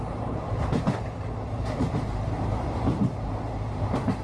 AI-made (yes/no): yes